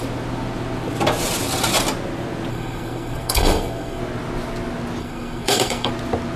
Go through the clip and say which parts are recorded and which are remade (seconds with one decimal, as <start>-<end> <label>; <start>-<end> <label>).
0.0-2.5 recorded; 2.5-4.0 remade; 4.0-5.0 recorded; 5.0-5.9 remade; 5.9-6.4 recorded